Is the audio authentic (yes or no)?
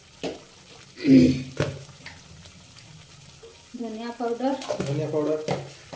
yes